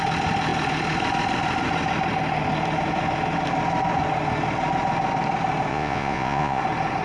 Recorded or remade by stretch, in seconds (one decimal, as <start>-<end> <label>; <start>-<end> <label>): 0.0-5.7 recorded; 5.7-6.6 remade; 6.6-7.0 recorded